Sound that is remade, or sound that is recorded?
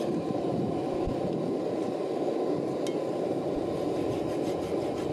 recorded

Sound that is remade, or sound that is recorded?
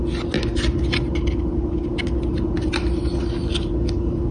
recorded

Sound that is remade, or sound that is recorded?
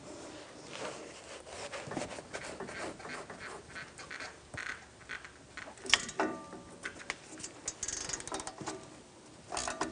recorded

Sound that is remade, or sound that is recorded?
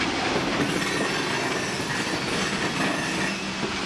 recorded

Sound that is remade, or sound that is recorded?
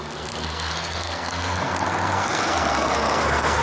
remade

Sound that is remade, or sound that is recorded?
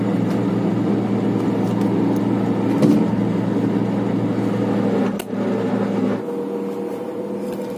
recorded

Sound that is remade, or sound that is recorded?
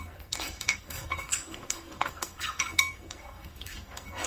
remade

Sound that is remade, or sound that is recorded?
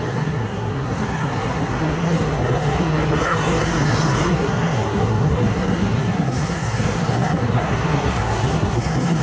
remade